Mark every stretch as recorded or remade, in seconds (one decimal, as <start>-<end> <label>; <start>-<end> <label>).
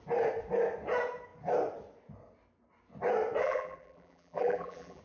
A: 0.0-3.4 recorded; 3.4-5.0 remade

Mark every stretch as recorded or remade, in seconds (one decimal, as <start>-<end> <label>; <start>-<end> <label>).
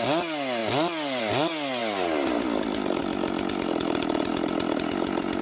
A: 0.0-0.6 recorded; 0.6-1.2 remade; 1.2-4.3 recorded; 4.3-5.4 remade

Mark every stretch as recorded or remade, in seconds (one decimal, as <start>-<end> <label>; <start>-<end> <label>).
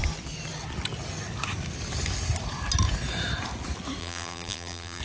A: 0.0-4.0 recorded; 4.0-5.0 remade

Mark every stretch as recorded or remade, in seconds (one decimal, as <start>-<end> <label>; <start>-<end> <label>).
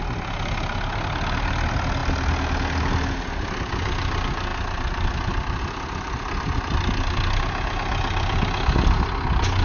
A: 0.0-4.5 recorded; 4.5-5.6 remade; 5.6-9.6 recorded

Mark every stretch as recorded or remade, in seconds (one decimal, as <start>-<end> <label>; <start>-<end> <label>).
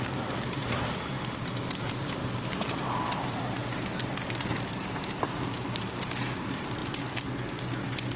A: 0.0-2.2 remade; 2.2-2.8 recorded; 2.8-6.8 remade; 6.8-8.2 recorded